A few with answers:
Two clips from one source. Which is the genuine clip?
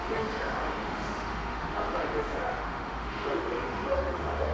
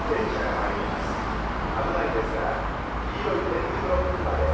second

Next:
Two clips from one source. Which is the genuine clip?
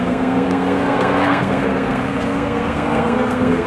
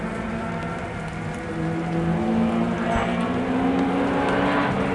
second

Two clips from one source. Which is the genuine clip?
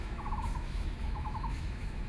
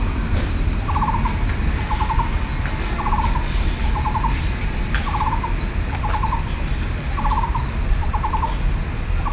second